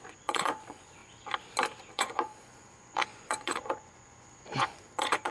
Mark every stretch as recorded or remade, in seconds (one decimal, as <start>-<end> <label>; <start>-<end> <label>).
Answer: 0.0-1.0 remade; 1.0-1.9 recorded; 1.9-5.3 remade